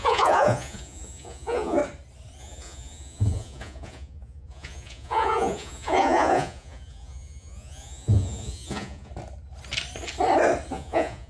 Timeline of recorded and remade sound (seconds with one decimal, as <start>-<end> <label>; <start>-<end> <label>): 0.0-1.8 remade; 1.8-2.4 recorded; 2.4-9.1 remade; 9.1-10.7 recorded; 10.7-11.3 remade